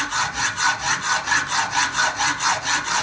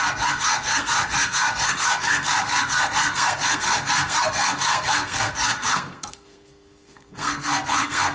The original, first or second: first